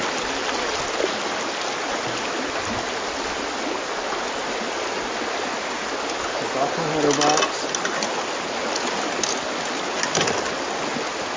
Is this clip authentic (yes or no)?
yes